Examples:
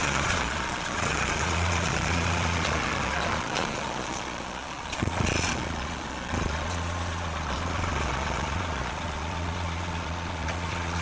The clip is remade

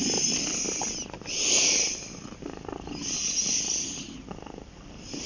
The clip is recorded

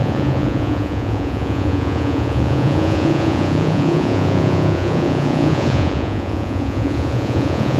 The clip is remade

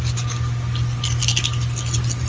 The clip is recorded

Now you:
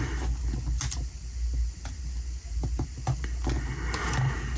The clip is recorded